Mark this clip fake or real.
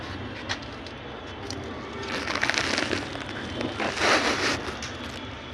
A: real